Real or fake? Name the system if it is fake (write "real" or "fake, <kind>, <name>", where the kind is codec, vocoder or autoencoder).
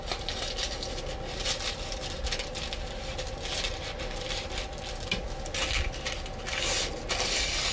real